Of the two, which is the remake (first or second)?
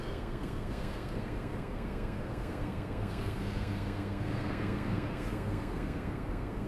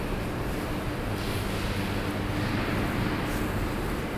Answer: first